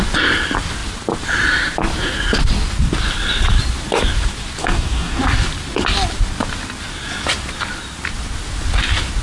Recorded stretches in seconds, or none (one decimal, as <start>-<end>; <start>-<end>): 0.0-4.6; 5.2-9.2